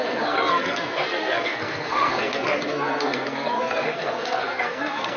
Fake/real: fake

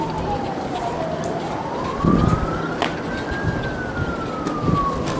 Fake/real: real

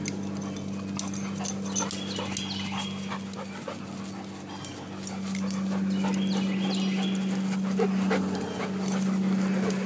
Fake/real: real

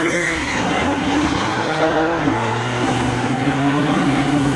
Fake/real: fake